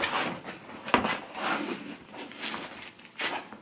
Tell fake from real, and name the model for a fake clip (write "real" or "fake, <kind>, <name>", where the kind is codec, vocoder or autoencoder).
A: real